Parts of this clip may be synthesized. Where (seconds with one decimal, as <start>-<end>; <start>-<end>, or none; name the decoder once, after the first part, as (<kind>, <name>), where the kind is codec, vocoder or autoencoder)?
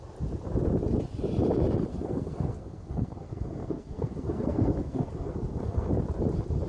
1.9-5.9 (codec, SNAC)